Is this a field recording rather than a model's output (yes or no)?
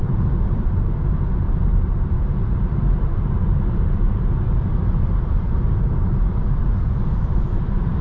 no